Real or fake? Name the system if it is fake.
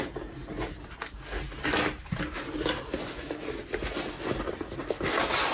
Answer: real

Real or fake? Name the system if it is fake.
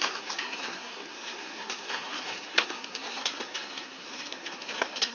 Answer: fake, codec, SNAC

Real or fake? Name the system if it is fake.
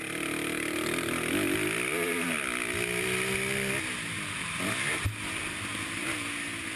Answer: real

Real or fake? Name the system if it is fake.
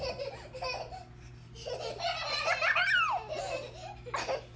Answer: real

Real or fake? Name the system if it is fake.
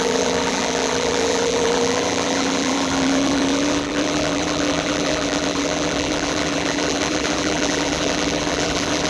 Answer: fake, vocoder, BigVGAN v2